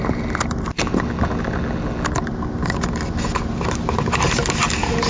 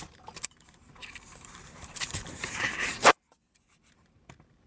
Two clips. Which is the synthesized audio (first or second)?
second